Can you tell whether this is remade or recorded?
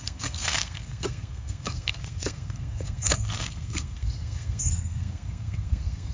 remade